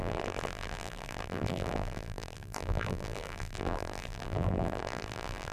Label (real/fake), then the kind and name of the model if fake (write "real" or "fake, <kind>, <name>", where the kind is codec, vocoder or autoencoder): fake, vocoder, BigVGAN v2